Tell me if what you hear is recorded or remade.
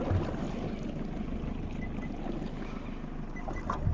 recorded